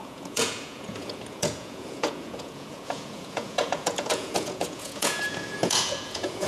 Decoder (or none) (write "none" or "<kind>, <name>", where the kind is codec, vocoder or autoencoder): vocoder, Vocos